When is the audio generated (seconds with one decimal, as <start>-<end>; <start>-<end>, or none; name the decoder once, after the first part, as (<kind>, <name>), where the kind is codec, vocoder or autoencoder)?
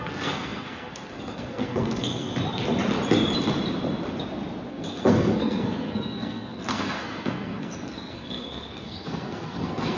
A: 0.0-2.3 (codec, SNAC); 4.7-10.0